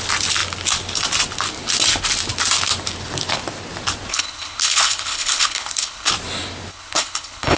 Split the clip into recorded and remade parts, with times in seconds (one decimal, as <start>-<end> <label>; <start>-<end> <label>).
0.0-4.1 recorded; 4.1-6.1 remade; 6.1-6.7 recorded; 6.7-7.6 remade